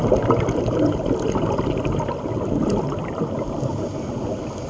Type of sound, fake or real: real